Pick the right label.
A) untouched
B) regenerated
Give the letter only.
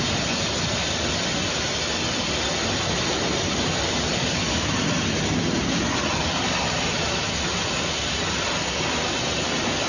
A